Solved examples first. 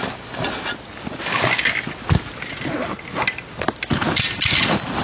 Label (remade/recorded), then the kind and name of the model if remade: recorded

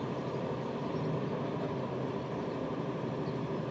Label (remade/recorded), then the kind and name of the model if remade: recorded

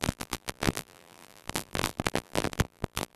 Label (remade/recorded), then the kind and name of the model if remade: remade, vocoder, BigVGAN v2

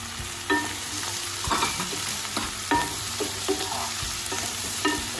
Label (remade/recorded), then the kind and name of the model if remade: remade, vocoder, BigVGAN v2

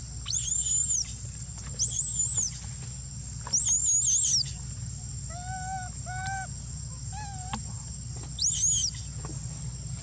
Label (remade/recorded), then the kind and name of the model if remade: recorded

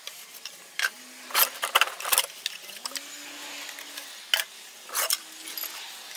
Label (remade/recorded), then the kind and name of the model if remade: recorded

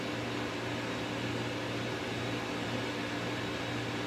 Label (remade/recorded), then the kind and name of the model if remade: recorded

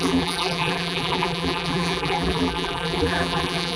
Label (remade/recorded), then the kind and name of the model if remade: remade, vocoder, BigVGAN v2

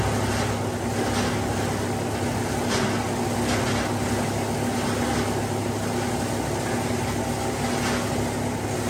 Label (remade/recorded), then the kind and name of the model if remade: recorded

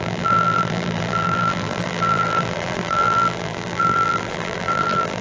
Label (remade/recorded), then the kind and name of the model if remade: remade, vocoder, BigVGAN v2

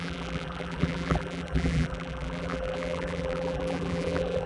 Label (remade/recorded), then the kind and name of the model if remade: remade, vocoder, BigVGAN v2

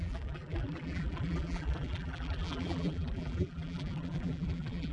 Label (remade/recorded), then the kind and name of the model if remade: remade, vocoder, BigVGAN v2